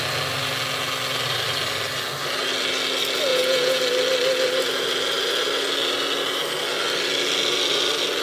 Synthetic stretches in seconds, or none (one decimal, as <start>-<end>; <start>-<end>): 3.3-3.8